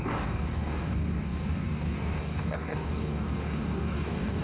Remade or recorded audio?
remade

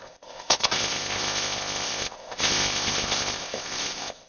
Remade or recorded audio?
remade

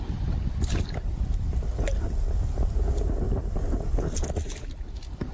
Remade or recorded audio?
recorded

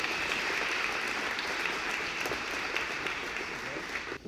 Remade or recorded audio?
recorded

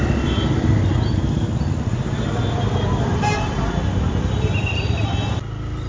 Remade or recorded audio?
recorded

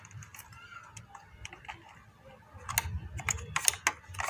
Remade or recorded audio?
recorded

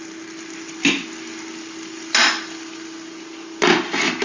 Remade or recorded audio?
recorded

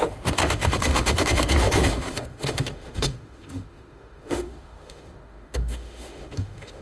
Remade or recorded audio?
remade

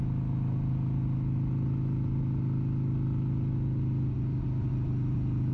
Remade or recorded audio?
recorded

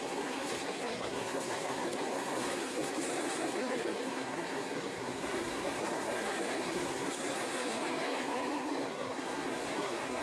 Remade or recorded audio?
remade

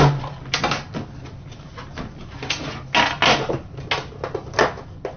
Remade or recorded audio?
recorded